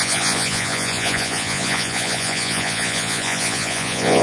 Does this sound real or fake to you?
fake